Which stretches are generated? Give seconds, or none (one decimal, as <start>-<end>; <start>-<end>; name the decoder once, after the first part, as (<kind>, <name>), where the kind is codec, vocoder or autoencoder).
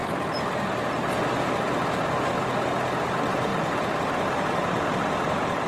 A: none